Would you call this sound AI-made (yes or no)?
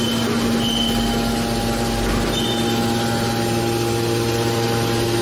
no